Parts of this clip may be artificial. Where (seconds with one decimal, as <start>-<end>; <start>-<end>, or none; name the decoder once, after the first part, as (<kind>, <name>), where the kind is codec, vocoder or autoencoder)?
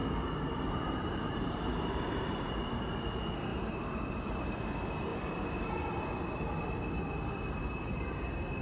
0.0-2.5 (vocoder, BigVGAN v2); 3.5-4.6; 5.1-5.7; 7.6-8.2